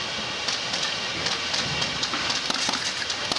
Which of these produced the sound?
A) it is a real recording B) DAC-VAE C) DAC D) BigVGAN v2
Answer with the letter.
A